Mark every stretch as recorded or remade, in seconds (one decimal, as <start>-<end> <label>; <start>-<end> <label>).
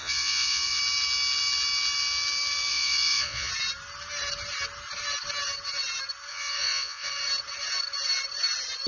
0.0-0.8 remade; 0.8-2.7 recorded; 2.7-3.5 remade; 3.5-6.3 recorded; 6.3-7.1 remade; 7.1-8.9 recorded